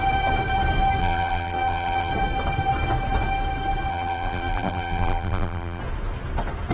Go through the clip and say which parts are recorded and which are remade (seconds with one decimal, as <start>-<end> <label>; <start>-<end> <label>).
0.0-1.0 recorded; 1.0-2.1 remade; 2.1-3.9 recorded; 3.9-5.8 remade; 5.8-6.7 recorded